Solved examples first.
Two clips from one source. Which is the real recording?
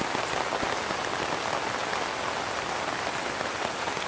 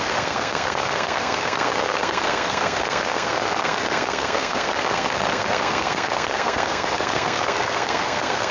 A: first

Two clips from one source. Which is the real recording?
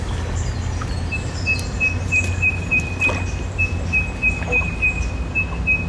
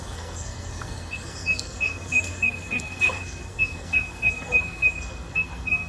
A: first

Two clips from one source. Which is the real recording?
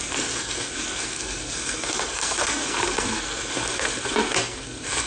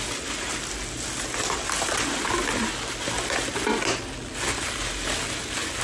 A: second